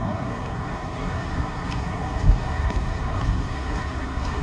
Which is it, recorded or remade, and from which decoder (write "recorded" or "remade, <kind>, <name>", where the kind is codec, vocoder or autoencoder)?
remade, codec, SNAC